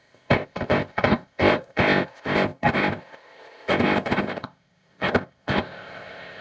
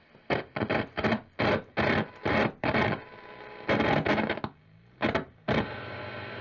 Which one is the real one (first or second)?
second